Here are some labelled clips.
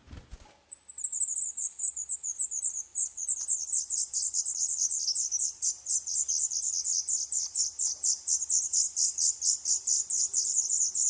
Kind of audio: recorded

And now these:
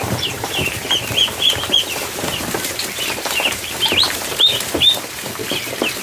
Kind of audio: recorded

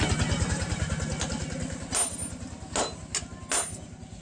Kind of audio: recorded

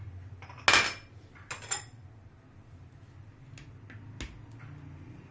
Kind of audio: recorded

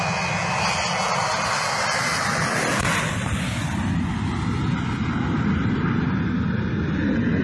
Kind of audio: recorded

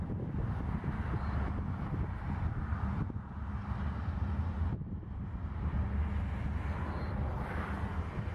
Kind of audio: recorded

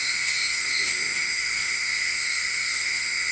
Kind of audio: remade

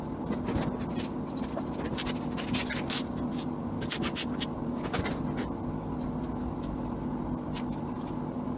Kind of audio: recorded